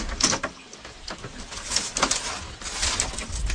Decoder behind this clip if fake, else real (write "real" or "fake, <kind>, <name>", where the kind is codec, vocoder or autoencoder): real